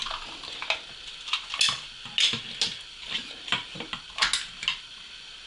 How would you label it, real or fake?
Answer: real